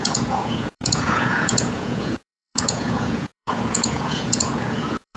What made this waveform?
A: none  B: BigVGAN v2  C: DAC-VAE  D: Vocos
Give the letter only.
D